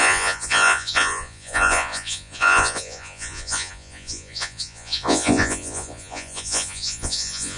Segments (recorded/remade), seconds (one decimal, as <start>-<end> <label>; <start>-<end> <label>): 0.0-7.6 remade